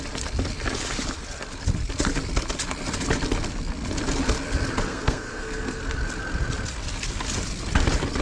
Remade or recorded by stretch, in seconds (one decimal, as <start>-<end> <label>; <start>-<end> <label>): 0.0-4.9 recorded; 4.9-5.8 remade; 5.8-8.2 recorded